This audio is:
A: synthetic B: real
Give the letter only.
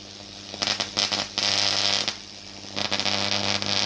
B